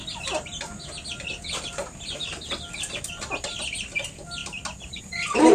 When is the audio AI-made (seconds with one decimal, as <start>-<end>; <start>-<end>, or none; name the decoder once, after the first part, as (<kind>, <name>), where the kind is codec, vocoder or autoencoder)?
none